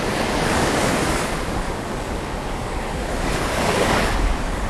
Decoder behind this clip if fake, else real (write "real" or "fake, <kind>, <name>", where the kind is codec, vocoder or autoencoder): fake, codec, DAC